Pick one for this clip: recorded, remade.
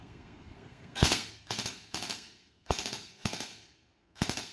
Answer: remade